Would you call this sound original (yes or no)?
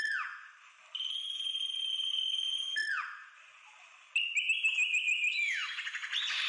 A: yes